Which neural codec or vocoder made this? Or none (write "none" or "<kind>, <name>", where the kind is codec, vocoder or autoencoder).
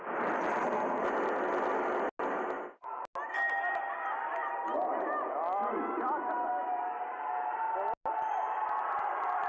none